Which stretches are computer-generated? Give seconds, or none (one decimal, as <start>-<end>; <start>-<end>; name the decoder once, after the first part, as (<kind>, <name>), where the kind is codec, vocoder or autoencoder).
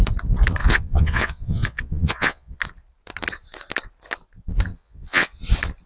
0.6-2.6 (vocoder, Vocos); 4.8-5.4